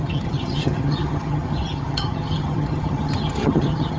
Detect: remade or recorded remade